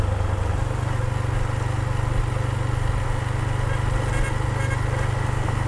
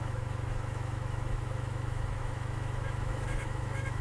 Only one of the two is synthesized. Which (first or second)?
second